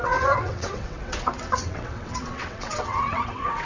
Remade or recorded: remade